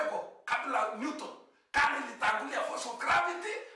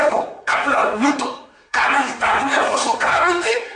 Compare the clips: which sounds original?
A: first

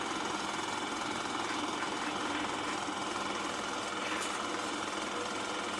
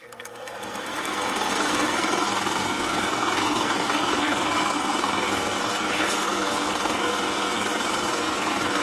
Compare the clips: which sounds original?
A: first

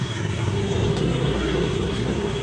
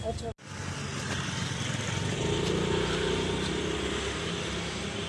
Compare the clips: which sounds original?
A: second